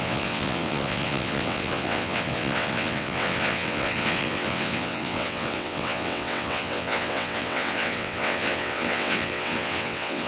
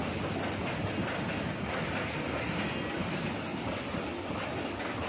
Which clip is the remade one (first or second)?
first